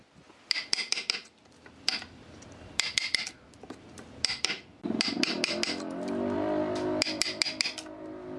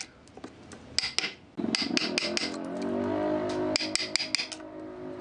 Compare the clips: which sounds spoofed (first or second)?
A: first